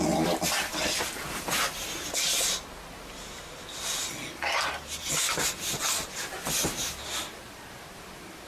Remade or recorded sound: recorded